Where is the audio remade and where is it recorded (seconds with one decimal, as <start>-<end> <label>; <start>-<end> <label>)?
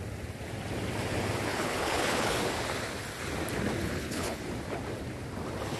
0.0-1.5 recorded; 1.5-2.4 remade; 2.4-3.8 recorded; 3.8-4.4 remade; 4.4-5.8 recorded